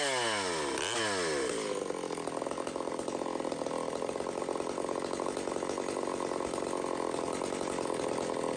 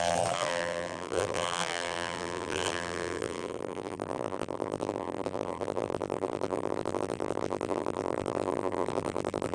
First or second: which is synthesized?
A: second